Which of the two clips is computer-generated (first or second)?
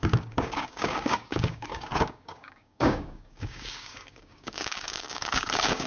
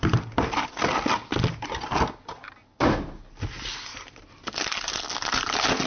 first